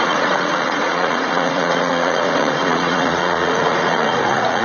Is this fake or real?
fake